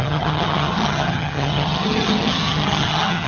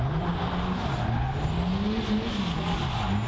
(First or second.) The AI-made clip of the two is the first